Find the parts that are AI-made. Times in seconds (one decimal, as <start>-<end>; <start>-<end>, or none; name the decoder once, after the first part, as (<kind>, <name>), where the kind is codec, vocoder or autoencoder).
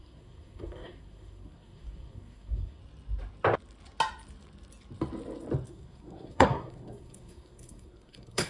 0.0-2.8 (codec, SNAC); 5.7-8.5